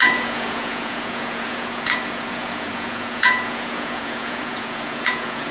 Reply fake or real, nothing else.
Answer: fake